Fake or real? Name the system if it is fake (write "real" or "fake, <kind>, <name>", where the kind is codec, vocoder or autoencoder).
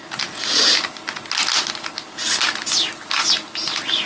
real